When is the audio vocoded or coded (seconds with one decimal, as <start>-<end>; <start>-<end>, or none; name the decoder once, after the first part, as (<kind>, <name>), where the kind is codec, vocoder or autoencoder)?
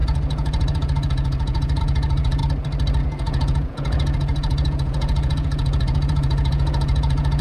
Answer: 0.0-2.4 (vocoder, Vocos); 3.0-7.4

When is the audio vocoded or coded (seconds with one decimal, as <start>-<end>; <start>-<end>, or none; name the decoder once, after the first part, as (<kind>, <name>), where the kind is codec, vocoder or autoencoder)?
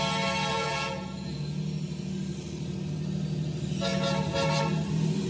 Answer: 0.5-1.6 (vocoder, Vocos)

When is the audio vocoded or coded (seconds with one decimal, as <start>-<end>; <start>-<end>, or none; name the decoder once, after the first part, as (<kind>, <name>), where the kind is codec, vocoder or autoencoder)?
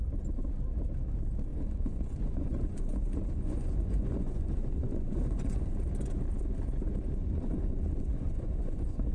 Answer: 1.5-5.7 (vocoder, Vocos); 7.2-9.1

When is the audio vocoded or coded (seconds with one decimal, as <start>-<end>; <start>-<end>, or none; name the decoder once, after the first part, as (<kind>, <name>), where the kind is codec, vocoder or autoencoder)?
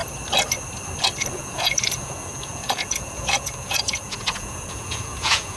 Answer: 1.3-5.6 (vocoder, Vocos)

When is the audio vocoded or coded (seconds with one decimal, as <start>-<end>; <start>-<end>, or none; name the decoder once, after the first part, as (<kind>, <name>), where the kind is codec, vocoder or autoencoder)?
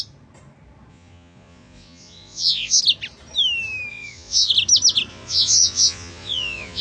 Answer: 0.9-2.8 (vocoder, Vocos); 3.9-4.5; 5.1-6.8